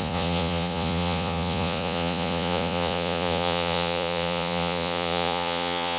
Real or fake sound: fake